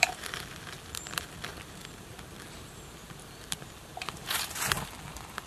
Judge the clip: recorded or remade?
remade